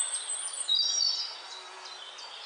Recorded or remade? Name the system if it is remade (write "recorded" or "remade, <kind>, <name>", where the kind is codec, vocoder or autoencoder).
recorded